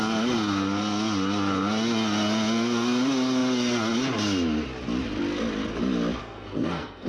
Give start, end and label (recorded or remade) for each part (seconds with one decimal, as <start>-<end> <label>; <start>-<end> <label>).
0.0-6.2 recorded; 6.2-7.1 remade